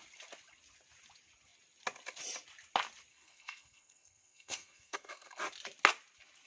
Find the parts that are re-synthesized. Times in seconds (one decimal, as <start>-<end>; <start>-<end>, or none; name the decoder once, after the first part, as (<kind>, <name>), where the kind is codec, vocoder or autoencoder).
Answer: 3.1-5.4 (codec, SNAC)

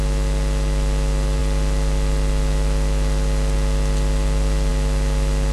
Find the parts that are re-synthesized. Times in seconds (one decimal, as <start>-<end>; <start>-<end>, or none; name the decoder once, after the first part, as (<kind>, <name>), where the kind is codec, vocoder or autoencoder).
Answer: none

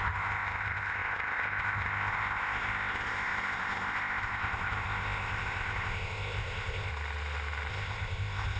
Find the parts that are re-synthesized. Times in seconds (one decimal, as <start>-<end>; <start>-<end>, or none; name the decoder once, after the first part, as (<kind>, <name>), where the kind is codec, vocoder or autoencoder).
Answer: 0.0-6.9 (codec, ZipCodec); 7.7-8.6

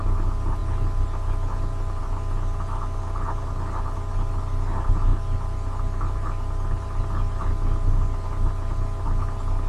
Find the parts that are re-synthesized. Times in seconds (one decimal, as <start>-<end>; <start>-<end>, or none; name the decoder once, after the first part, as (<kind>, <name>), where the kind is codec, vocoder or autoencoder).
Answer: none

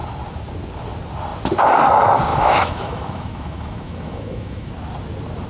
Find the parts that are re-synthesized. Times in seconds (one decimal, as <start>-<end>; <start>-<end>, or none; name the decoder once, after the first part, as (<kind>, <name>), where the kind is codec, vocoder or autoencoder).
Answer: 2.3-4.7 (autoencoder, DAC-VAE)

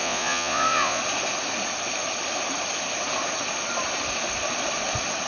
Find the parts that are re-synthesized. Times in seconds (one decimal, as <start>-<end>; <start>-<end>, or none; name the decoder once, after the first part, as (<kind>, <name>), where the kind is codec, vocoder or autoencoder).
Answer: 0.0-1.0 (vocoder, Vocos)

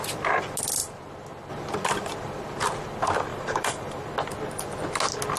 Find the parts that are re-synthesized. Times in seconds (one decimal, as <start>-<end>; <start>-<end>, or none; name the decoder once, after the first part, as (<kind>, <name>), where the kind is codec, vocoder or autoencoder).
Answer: 3.3-4.0 (vocoder, BigVGAN v2)

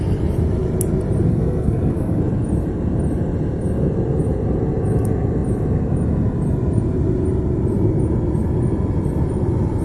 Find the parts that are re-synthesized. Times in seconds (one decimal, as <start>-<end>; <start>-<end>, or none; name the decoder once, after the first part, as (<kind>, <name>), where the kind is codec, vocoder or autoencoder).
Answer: 1.3-2.2 (codec, SNAC)